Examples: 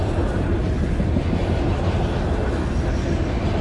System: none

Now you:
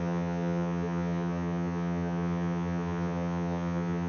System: vocoder, HiFi-GAN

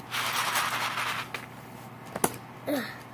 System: none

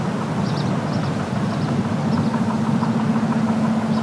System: none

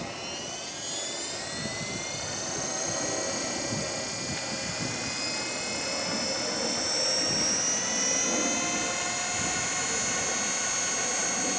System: none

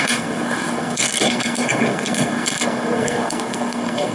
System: codec, SNAC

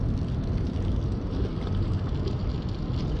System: none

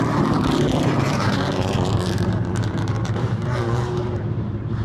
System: vocoder, BigVGAN v2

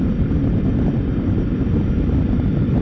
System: none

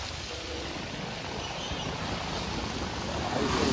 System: none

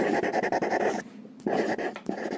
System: vocoder, BigVGAN v2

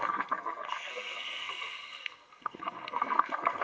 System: codec, SNAC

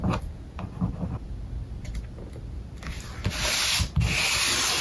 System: none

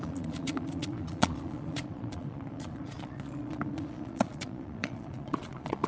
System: vocoder, Vocos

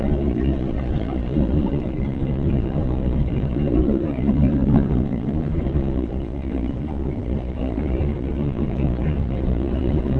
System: vocoder, Vocos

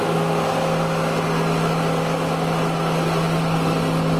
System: none